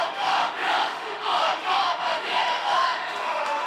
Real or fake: fake